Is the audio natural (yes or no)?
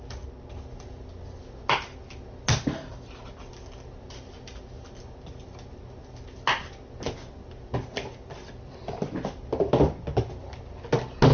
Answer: yes